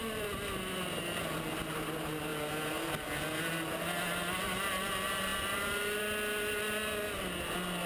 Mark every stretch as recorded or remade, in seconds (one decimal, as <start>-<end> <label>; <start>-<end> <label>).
0.0-7.9 recorded